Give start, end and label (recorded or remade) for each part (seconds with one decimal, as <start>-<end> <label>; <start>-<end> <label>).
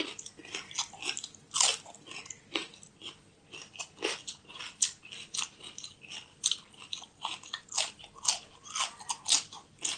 0.0-10.0 recorded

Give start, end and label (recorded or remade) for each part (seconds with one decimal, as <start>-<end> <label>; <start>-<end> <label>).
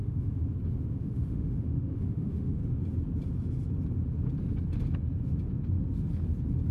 0.0-0.4 remade; 0.4-0.9 recorded; 0.9-2.6 remade; 2.6-6.7 recorded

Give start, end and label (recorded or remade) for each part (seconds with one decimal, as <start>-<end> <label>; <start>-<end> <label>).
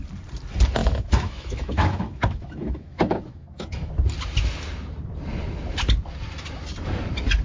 0.0-0.8 recorded; 0.8-3.9 remade; 3.9-7.4 recorded